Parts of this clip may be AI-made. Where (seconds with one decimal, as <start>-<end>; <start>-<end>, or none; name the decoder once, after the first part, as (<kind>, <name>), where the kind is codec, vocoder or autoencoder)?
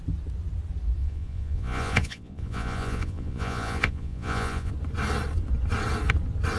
1.0-4.7 (vocoder, Vocos)